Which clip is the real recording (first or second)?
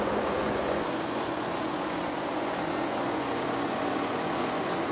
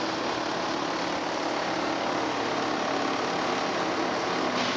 second